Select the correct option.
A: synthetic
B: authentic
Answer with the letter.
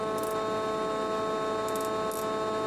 B